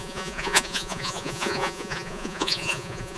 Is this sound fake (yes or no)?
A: yes